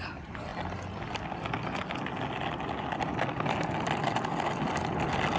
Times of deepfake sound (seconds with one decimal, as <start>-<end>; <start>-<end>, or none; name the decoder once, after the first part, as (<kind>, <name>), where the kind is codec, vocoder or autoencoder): none